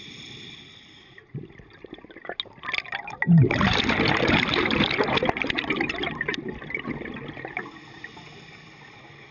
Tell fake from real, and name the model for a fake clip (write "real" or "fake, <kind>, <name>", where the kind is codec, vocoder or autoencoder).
real